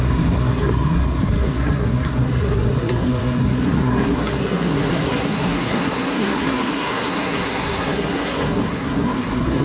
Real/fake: fake